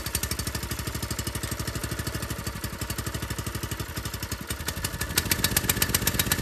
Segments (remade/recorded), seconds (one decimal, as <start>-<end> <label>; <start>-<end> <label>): 0.0-6.4 recorded